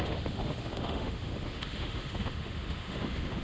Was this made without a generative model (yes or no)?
no